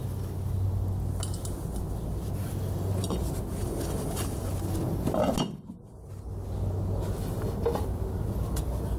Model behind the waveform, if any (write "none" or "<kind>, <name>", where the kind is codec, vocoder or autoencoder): none